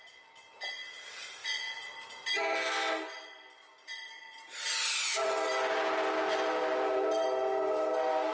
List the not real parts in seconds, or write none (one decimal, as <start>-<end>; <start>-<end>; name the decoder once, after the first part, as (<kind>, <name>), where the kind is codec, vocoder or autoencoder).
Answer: none